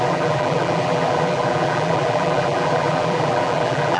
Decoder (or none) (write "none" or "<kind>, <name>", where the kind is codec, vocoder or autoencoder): vocoder, BigVGAN v2